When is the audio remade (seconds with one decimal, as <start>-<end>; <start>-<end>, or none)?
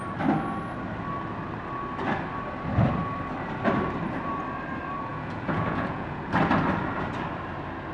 5.1-6.2